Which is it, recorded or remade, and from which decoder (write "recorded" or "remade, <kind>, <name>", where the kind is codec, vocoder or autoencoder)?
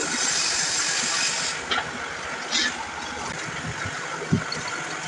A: recorded